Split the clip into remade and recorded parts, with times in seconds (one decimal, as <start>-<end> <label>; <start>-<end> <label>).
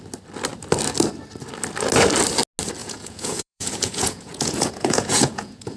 0.0-2.8 recorded; 2.8-5.8 remade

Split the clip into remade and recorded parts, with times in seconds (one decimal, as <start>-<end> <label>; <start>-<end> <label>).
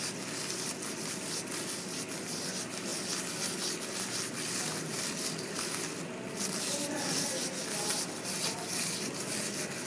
0.0-9.9 recorded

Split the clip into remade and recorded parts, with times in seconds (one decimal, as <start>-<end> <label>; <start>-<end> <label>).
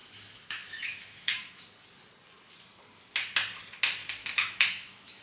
0.0-1.6 remade; 1.6-4.2 recorded; 4.2-5.2 remade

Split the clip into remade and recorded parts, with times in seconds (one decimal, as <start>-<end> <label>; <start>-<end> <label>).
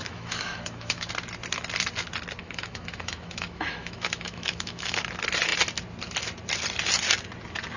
0.0-1.1 remade; 1.1-2.4 recorded; 2.4-5.0 remade; 5.0-7.8 recorded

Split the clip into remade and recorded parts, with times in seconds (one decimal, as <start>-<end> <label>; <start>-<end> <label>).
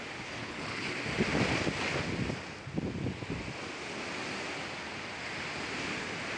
0.0-0.4 recorded; 0.4-0.9 remade; 0.9-6.4 recorded